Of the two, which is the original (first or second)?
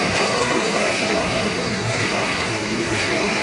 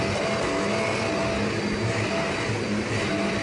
second